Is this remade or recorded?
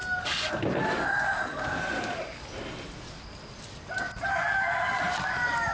recorded